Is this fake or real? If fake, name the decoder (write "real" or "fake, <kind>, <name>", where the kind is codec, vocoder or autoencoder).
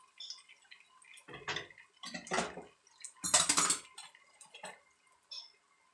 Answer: real